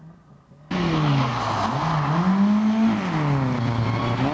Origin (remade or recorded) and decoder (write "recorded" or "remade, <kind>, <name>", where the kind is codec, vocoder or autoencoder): recorded